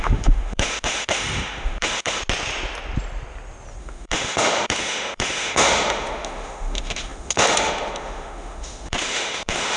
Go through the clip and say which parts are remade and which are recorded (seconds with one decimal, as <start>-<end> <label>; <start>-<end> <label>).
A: 0.0-2.2 remade; 2.2-3.8 recorded; 3.8-9.8 remade